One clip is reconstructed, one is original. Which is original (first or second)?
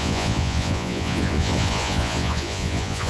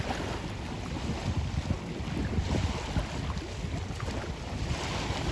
second